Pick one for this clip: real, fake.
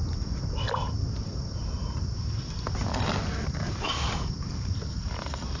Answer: real